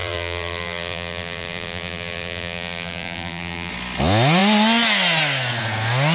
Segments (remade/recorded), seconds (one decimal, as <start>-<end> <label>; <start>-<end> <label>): 0.0-3.7 remade; 3.7-6.1 recorded